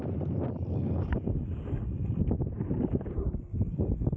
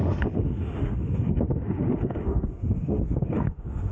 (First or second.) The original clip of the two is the first